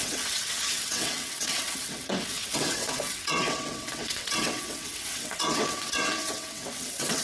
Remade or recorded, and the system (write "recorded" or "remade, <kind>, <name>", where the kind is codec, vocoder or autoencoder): remade, vocoder, WaveNeXt